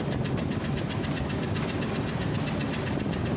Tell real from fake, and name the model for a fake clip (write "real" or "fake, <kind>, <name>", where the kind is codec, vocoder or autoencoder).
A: fake, vocoder, BigVGAN v2